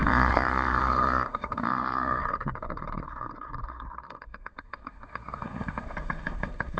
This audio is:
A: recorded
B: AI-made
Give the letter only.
B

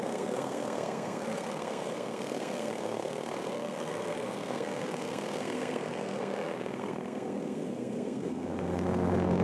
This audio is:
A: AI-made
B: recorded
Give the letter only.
A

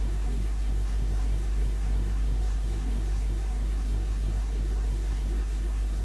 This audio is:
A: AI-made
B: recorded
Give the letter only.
A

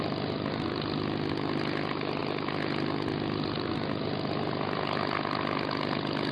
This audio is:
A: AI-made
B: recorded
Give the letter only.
B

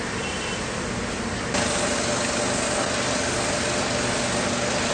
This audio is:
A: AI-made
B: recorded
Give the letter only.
B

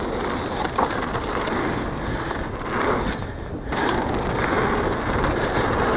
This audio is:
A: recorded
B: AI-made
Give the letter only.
A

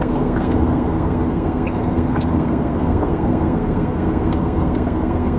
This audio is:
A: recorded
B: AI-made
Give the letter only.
B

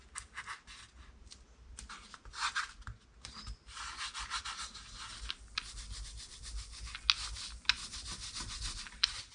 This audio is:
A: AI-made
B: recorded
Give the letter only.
B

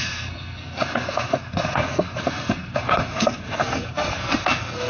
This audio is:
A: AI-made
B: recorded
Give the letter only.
A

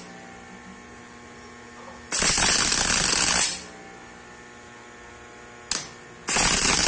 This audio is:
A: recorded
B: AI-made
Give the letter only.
A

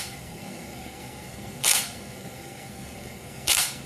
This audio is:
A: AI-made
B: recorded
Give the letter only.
A